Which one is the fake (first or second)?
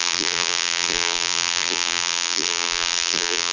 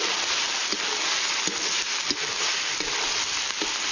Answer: first